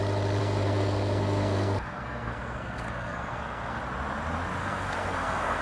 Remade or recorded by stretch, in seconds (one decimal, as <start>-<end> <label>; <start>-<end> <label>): 0.0-0.4 recorded; 0.4-3.8 remade; 3.8-4.6 recorded; 4.6-5.6 remade